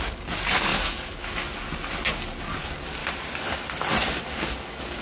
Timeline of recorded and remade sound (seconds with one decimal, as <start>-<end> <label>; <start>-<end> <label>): 0.0-3.0 remade; 3.0-4.4 recorded; 4.4-5.0 remade